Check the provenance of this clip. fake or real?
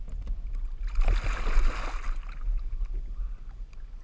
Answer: real